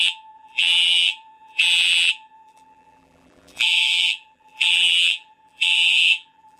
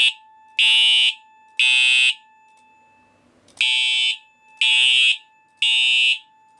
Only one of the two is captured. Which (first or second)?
second